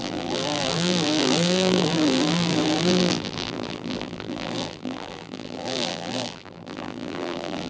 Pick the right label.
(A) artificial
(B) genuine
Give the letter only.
A